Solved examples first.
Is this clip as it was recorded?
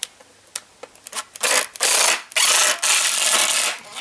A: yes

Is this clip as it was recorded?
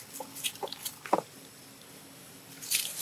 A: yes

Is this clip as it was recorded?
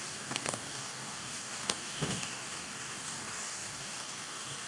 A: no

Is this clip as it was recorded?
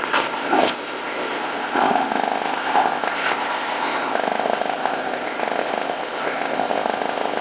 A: no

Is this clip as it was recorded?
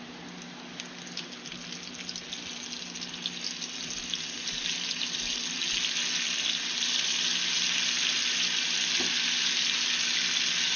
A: yes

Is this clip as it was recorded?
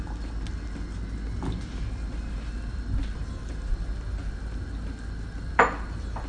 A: yes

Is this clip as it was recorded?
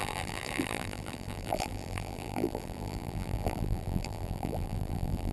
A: no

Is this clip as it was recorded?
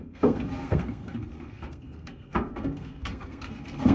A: no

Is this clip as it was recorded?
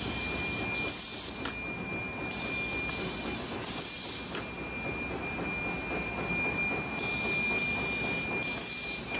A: yes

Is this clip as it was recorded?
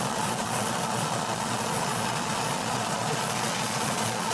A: no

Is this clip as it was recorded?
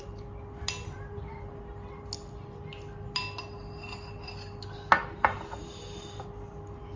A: yes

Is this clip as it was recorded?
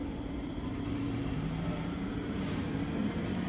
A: no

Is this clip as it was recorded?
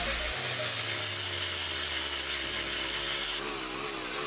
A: yes